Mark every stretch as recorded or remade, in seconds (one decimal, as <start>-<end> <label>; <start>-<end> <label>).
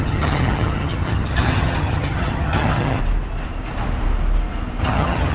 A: 0.0-3.0 remade; 3.0-4.8 recorded; 4.8-5.3 remade